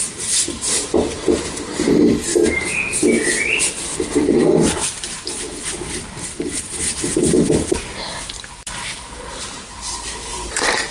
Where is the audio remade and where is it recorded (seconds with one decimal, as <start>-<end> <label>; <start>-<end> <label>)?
0.0-3.0 remade; 3.0-3.7 recorded; 3.7-10.9 remade